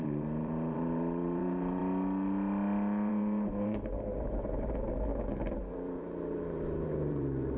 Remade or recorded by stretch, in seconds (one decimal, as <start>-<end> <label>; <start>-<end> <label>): 0.0-1.8 remade; 1.8-3.1 recorded; 3.1-5.1 remade; 5.1-5.7 recorded; 5.7-7.6 remade